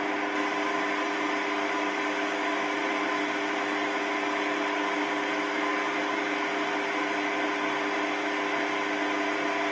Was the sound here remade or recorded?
recorded